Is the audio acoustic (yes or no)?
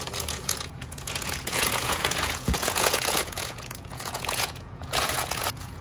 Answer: no